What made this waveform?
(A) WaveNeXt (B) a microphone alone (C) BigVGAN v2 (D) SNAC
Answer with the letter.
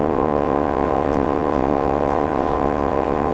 A